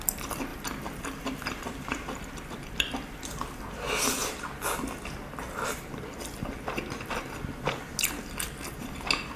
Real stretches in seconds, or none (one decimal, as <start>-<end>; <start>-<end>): 0.0-0.5; 3.6-9.4